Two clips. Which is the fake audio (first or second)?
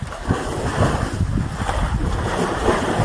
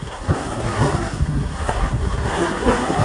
second